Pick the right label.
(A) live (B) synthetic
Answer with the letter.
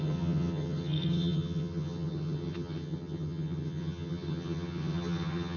B